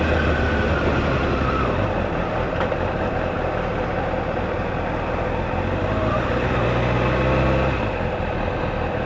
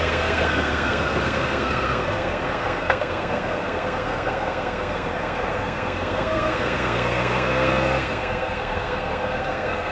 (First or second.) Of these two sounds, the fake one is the second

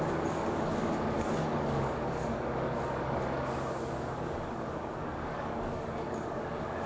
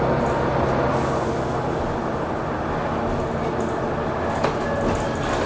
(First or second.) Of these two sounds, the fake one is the first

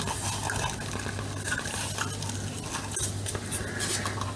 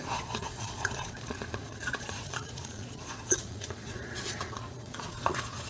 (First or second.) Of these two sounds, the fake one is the second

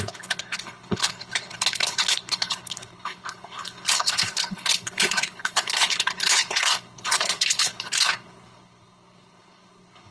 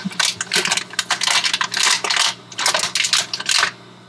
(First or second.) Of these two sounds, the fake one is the first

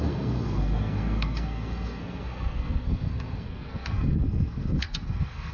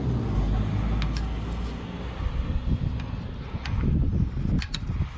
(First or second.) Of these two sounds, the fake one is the first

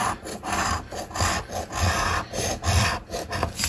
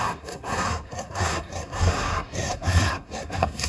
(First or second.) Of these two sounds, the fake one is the second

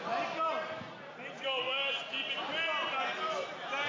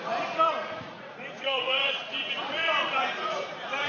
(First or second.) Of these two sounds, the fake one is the second